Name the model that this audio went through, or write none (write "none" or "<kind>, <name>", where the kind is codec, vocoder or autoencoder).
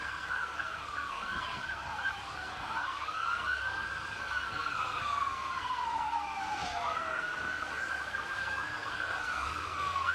codec, SNAC